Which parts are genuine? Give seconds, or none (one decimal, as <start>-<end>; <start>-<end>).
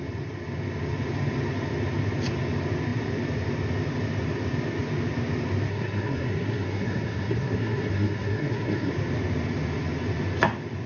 0.0-5.7; 8.9-10.9